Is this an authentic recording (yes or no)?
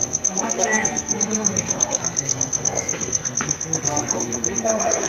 no